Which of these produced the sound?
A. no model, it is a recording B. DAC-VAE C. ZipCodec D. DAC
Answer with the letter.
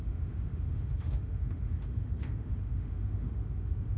B